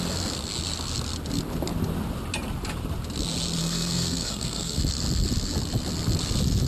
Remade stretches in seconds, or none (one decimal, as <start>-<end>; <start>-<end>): 3.6-4.8